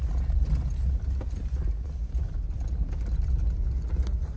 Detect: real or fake real